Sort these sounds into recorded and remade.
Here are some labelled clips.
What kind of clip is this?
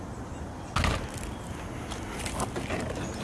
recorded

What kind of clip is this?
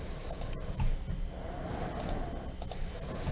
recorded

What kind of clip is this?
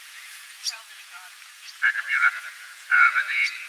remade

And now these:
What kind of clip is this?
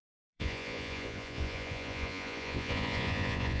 remade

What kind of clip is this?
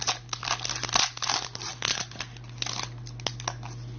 recorded